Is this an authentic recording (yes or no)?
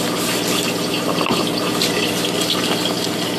yes